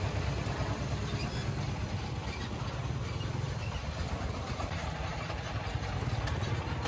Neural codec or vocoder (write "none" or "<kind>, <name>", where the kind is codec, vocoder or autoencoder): none